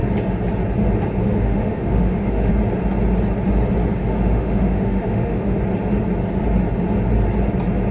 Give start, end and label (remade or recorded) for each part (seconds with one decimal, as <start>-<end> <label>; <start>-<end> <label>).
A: 0.0-1.2 recorded; 1.2-2.5 remade; 2.5-4.0 recorded; 4.0-5.6 remade; 5.6-7.9 recorded